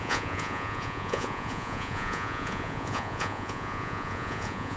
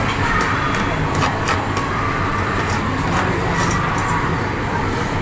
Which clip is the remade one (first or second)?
first